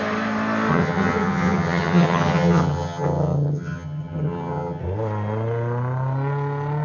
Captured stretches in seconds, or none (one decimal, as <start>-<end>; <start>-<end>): 0.0-0.7; 4.8-6.8